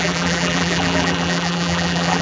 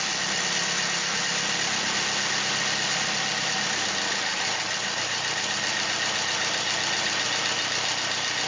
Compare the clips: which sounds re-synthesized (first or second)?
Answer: first